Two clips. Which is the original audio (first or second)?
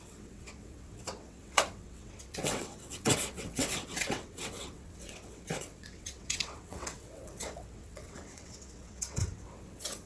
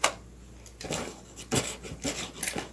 second